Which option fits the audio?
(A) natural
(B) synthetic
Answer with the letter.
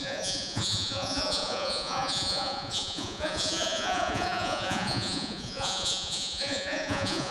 B